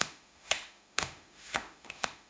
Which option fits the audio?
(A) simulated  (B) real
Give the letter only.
A